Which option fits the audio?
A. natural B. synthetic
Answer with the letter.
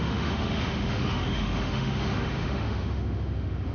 B